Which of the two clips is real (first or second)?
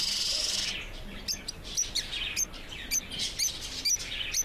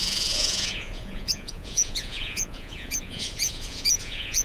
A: first